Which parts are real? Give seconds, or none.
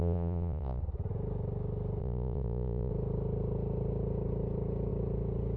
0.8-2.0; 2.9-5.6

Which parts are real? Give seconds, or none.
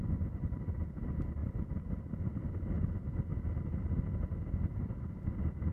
3.3-3.8